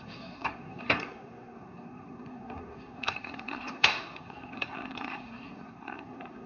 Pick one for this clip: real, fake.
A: fake